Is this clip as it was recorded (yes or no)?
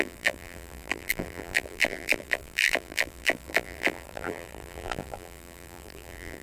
no